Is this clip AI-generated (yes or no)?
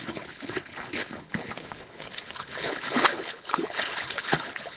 yes